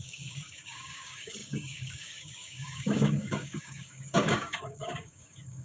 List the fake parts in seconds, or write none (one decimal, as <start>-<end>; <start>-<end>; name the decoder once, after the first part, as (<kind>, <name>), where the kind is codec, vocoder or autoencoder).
0.0-5.6 (codec, DAC)